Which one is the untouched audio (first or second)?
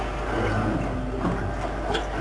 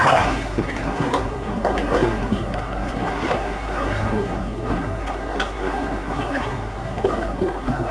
first